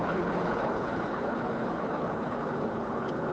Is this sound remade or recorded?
remade